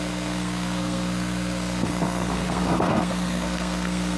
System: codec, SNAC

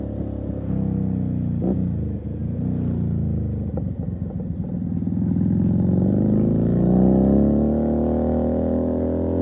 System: none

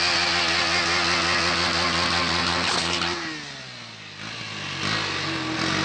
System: none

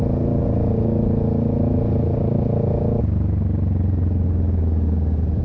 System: none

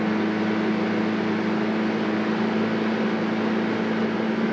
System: none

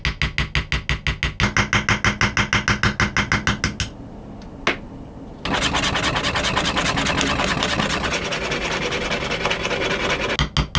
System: none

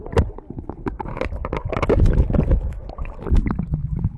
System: none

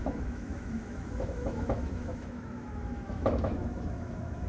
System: autoencoder, DAC-VAE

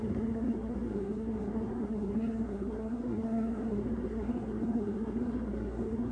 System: codec, SNAC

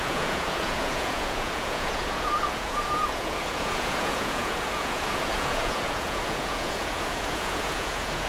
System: vocoder, Vocos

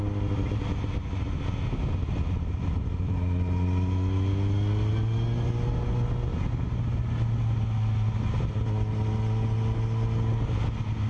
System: none